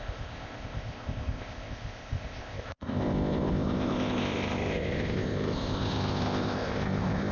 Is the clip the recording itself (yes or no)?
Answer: no